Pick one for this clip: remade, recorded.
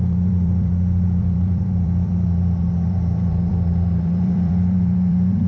remade